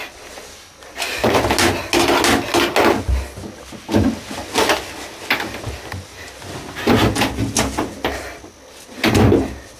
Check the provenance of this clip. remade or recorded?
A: recorded